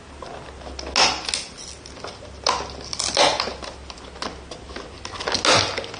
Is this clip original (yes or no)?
yes